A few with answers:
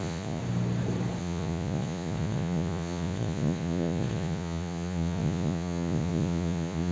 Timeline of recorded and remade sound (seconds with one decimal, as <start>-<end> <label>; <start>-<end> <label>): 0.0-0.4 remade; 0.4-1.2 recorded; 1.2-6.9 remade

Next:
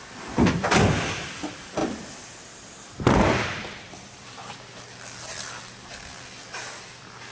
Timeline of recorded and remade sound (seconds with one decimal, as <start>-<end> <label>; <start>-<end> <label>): 0.0-7.3 recorded

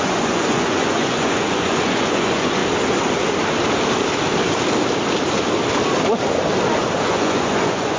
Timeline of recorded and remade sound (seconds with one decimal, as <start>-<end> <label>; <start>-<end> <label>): 0.0-2.6 remade; 2.6-7.0 recorded; 7.0-8.0 remade

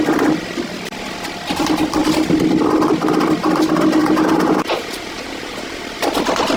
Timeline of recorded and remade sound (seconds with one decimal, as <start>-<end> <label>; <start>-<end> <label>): 0.0-4.0 recorded; 4.0-5.8 remade; 5.8-6.6 recorded

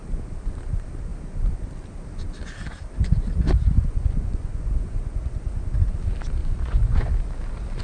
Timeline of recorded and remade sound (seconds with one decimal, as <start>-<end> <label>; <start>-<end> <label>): 0.0-4.0 recorded; 4.0-5.2 remade; 5.2-6.4 recorded; 6.4-7.1 remade; 7.1-7.8 recorded

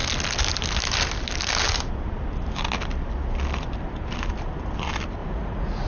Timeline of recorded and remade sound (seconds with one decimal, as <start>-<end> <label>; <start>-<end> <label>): 0.0-5.2 recorded; 5.2-5.9 remade

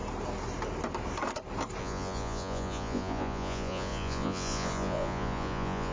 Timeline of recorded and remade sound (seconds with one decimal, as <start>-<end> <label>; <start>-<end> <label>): 0.0-1.8 recorded; 1.8-5.9 remade